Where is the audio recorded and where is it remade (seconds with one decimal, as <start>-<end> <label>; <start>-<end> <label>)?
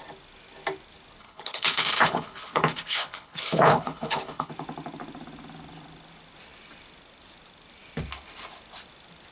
0.0-1.2 recorded; 1.2-4.5 remade; 4.5-9.3 recorded